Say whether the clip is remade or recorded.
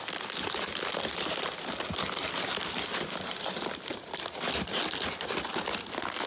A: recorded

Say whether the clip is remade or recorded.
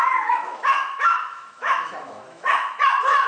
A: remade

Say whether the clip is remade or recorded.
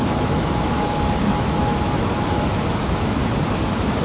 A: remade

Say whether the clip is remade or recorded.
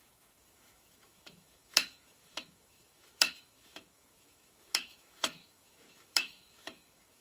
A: remade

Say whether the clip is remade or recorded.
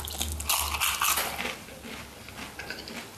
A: recorded